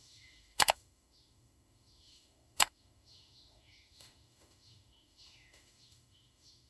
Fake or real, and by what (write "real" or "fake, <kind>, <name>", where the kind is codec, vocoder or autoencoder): fake, autoencoder, DAC-VAE